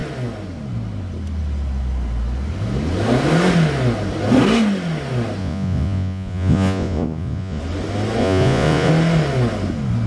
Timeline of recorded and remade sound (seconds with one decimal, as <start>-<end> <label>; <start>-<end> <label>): 0.0-5.4 recorded; 5.4-7.6 remade; 7.6-8.2 recorded; 8.2-8.9 remade; 8.9-10.1 recorded